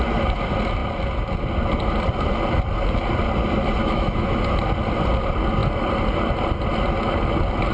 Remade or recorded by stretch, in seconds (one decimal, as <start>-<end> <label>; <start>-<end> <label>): 0.0-3.8 recorded; 3.8-4.5 remade; 4.5-7.7 recorded